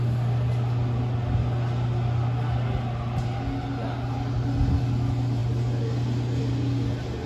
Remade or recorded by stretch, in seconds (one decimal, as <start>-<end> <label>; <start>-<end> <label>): 0.0-7.3 recorded